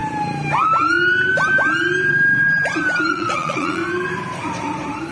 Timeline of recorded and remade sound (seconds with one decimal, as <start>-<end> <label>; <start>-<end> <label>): 0.0-3.1 recorded; 3.1-3.8 remade; 3.8-5.1 recorded